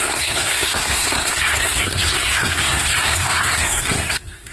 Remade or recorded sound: remade